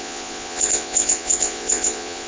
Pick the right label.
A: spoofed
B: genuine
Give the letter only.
A